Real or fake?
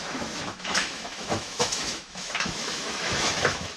fake